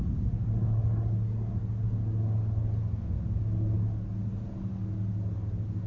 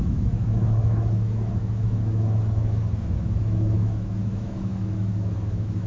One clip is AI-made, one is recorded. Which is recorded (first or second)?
first